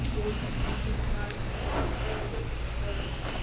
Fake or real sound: real